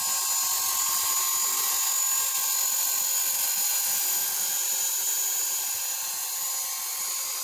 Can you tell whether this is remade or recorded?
recorded